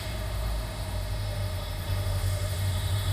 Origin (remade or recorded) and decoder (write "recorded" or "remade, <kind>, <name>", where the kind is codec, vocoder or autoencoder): remade, autoencoder, DAC-VAE